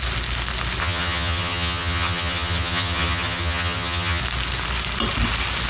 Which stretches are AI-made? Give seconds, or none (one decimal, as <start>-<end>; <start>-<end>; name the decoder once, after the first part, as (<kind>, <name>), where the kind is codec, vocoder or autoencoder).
0.8-4.2 (vocoder, HiFi-GAN)

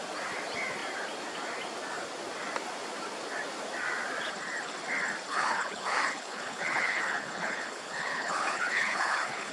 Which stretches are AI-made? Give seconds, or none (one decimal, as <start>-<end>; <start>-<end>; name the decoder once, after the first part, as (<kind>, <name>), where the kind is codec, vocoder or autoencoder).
5.3-9.5 (codec, HILCodec)

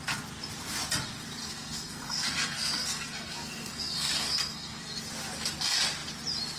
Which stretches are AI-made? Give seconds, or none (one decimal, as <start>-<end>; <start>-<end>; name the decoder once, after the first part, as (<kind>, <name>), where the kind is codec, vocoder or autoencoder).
1.4-5.0 (codec, SNAC)